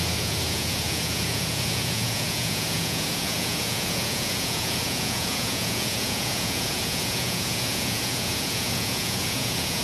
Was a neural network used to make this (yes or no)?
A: yes